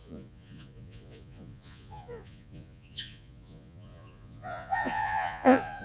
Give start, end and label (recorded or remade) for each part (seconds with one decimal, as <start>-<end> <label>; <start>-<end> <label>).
0.0-5.8 remade